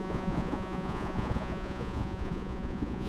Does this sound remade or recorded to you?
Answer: remade